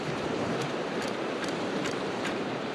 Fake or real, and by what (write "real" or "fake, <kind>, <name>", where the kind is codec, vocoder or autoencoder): fake, vocoder, BigVGAN v2